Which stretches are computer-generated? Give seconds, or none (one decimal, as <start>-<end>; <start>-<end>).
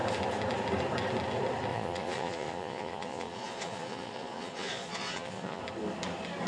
1.7-5.6